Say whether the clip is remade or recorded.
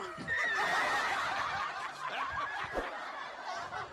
recorded